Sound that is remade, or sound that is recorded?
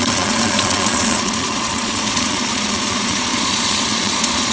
remade